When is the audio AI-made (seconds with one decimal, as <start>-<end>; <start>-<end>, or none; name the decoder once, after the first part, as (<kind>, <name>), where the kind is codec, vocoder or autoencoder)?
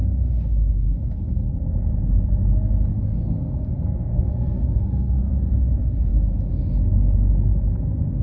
2.9-5.3 (codec, SNAC)